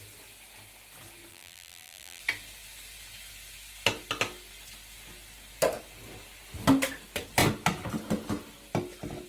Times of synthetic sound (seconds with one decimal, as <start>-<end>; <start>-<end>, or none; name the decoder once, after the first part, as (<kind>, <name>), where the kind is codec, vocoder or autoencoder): 1.3-2.2 (vocoder, BigVGAN v2)